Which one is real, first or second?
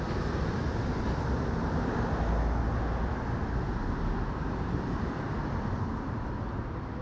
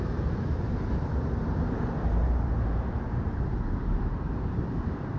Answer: first